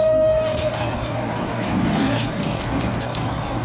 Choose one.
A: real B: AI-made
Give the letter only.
B